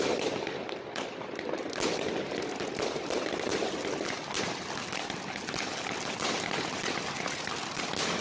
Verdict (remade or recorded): recorded